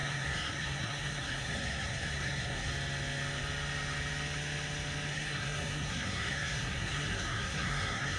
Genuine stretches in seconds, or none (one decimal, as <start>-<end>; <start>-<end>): 2.7-5.1